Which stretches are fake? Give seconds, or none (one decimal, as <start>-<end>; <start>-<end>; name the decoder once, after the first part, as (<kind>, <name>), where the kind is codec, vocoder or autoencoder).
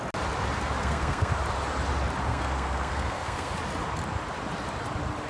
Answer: 0.8-1.3 (codec, SNAC); 2.3-3.5